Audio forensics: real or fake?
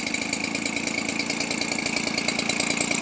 real